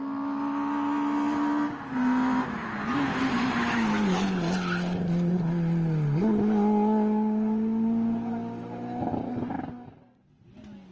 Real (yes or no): yes